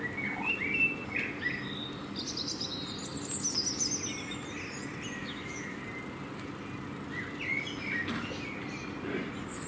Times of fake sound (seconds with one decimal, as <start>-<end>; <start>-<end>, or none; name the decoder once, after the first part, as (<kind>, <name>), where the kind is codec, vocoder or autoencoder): 5.2-5.8 (autoencoder, DAC-VAE)